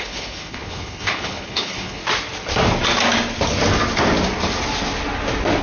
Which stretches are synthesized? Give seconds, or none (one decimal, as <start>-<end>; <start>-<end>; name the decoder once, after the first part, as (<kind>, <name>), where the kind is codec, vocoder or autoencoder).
0.0-2.0 (codec, HILCodec)